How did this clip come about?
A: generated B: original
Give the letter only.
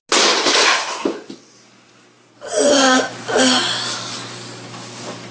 B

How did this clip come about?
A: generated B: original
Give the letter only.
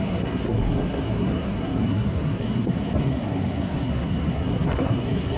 A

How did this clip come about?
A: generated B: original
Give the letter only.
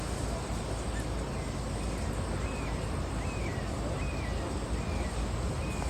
B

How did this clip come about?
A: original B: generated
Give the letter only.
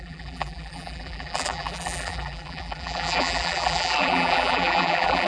B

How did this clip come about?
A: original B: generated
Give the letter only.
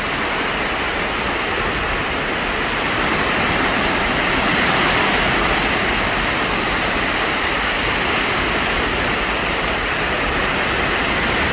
A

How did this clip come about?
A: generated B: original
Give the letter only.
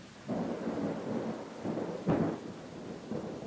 B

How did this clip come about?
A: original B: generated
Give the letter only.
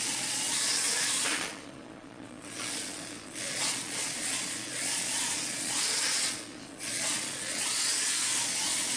B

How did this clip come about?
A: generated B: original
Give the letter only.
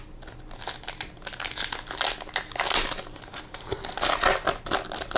B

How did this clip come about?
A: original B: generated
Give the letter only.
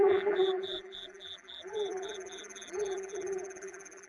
B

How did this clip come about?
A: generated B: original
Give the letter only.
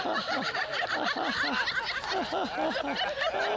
B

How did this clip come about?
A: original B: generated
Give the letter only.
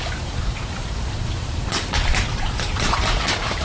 B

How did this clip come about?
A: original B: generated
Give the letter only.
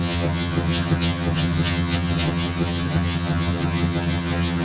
B